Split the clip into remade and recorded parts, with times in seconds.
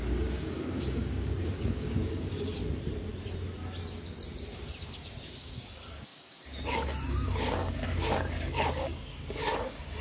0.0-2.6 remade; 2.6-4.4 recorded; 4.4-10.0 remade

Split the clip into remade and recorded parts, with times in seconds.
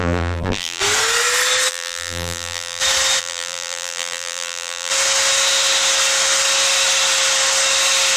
0.0-0.8 remade; 0.8-1.7 recorded; 1.7-2.8 remade; 2.8-3.2 recorded; 3.2-4.9 remade; 4.9-8.2 recorded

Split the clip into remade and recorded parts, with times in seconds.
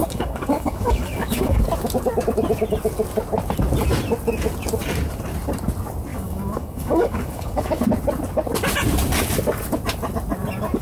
0.0-1.6 remade; 1.6-6.1 recorded; 6.1-7.8 remade; 7.8-10.8 recorded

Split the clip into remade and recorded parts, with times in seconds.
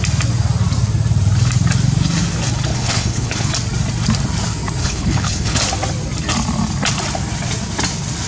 0.0-2.7 recorded; 2.7-3.5 remade; 3.5-4.8 recorded; 4.8-5.6 remade; 5.6-8.3 recorded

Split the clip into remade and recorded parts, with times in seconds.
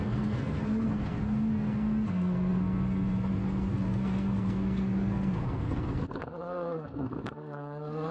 0.0-8.1 remade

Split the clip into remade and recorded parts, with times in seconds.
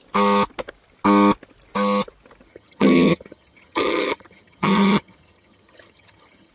0.0-2.5 recorded; 2.5-6.5 remade